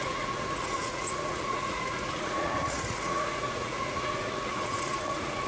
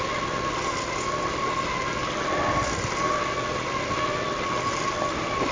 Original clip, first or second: second